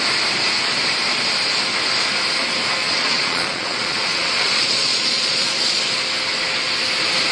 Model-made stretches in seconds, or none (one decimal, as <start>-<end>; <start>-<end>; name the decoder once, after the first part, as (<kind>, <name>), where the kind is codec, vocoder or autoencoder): 2.8-5.8 (vocoder, Vocos)